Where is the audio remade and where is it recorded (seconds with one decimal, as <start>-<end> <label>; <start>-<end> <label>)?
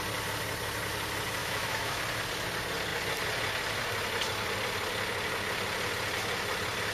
0.0-1.4 recorded; 1.4-2.0 remade; 2.0-6.9 recorded